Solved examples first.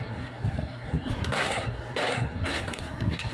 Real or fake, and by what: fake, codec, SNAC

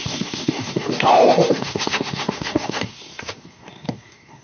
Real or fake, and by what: fake, codec, SNAC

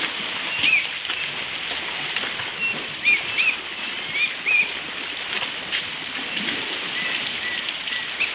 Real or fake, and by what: real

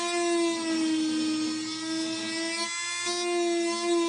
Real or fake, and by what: real